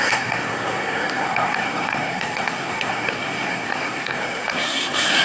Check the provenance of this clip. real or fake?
fake